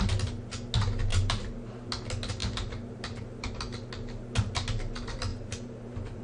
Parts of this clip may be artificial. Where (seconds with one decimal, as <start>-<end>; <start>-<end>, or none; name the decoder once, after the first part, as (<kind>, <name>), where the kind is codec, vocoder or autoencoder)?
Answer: 1.1-1.9 (vocoder, BigVGAN v2); 2.4-3.5; 5.3-6.2